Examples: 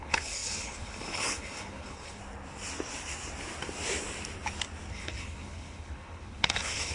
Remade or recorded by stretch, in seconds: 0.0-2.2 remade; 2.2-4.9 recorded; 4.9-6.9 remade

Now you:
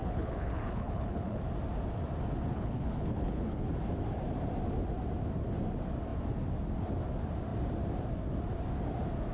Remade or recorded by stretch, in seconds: 0.0-1.4 remade; 1.4-2.5 recorded; 2.5-3.7 remade; 3.7-9.3 recorded

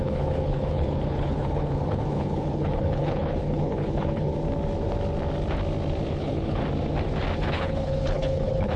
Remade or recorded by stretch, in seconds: 0.0-4.3 remade; 4.3-6.1 recorded; 6.1-6.6 remade; 6.6-7.4 recorded; 7.4-8.8 remade

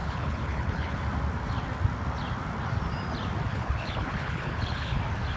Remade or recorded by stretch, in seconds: 0.0-1.0 remade; 1.0-3.5 recorded; 3.5-5.0 remade; 5.0-5.4 recorded